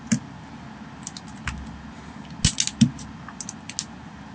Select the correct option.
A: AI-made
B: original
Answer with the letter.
B